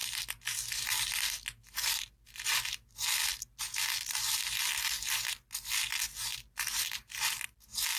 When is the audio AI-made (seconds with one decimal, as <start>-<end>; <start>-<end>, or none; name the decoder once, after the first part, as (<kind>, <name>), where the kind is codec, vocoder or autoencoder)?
none